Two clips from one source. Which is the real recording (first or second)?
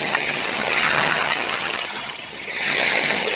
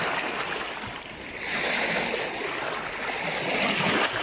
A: second